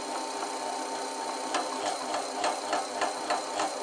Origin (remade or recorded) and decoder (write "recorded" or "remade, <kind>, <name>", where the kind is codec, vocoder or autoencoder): recorded